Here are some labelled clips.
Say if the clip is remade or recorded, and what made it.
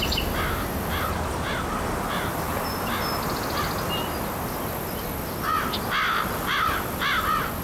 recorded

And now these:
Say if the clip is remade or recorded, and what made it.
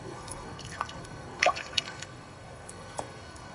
remade, codec, SNAC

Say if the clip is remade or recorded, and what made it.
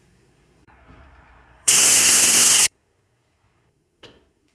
remade, codec, SNAC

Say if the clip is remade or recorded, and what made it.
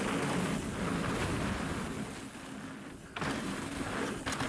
recorded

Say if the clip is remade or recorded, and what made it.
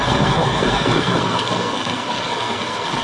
remade, codec, SNAC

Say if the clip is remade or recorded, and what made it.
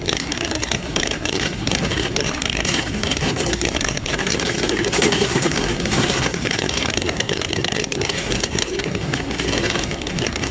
remade, codec, SNAC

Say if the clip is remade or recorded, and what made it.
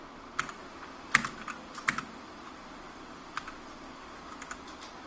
recorded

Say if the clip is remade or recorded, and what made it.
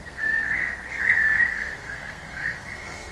remade, codec, SNAC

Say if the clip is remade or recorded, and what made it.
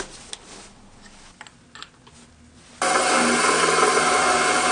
recorded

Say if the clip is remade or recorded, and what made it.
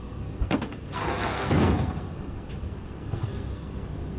remade, codec, SNAC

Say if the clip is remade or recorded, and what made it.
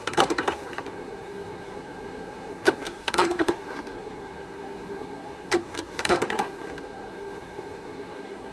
remade, codec, SNAC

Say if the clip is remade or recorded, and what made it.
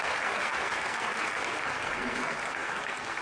remade, codec, SNAC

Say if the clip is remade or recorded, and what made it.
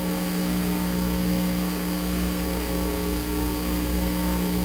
remade, codec, SNAC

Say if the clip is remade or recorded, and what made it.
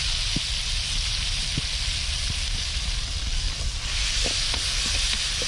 recorded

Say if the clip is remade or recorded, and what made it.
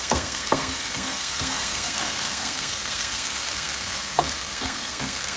remade, codec, SNAC